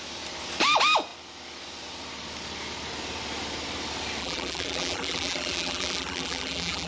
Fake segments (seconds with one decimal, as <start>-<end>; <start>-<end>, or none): 4.2-6.9